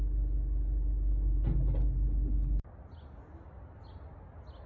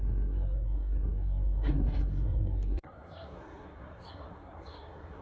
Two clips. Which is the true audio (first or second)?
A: first